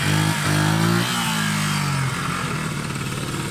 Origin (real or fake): real